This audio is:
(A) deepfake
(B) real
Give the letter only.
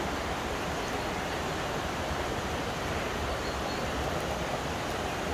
B